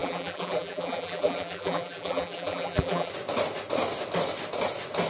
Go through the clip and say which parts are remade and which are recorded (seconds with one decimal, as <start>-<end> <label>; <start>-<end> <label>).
0.0-3.1 remade; 3.1-5.1 recorded